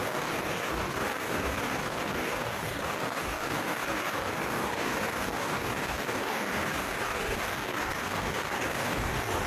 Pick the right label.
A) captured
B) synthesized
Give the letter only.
B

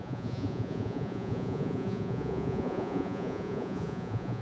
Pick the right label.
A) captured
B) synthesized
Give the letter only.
B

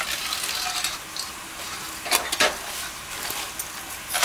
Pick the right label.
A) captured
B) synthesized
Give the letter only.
A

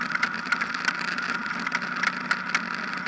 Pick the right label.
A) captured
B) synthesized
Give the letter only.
A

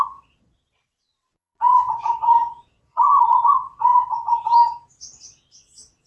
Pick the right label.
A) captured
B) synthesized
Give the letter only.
B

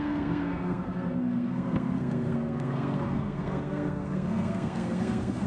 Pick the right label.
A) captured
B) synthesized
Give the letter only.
B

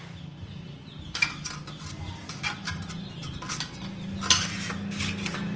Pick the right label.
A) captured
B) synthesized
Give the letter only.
A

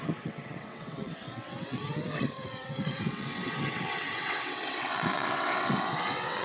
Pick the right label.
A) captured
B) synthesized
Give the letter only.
B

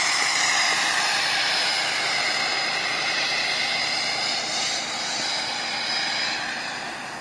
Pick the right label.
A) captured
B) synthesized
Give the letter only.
A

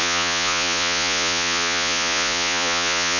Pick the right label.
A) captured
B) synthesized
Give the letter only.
B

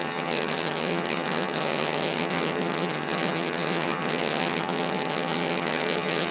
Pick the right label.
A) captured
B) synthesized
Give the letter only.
B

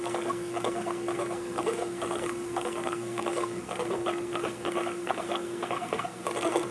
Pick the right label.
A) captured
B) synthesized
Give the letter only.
B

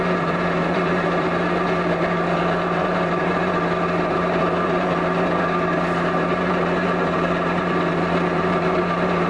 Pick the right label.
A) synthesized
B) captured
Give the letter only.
A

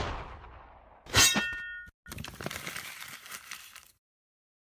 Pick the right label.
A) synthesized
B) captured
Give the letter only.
B